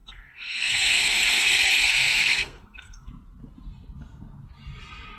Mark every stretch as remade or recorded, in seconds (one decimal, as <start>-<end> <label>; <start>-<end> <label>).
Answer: 0.0-3.1 remade; 3.1-5.2 recorded